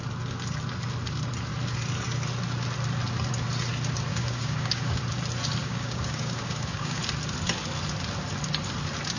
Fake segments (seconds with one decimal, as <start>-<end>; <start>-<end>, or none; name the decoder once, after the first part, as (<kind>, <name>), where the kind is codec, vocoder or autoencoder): 4.1-5.0 (codec, DAC); 5.6-7.0